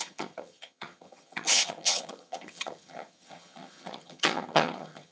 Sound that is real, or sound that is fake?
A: fake